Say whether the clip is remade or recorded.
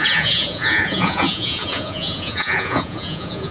remade